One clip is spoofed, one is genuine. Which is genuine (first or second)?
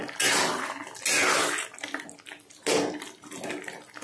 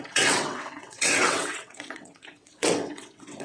first